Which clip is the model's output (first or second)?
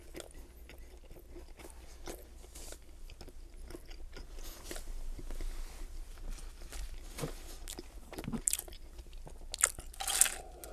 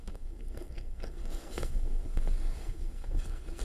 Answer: second